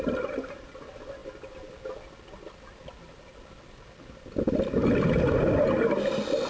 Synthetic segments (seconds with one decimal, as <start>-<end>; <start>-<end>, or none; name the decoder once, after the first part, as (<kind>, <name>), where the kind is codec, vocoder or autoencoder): none